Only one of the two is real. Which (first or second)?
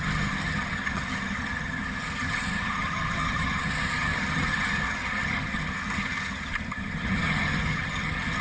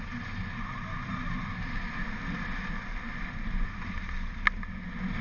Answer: second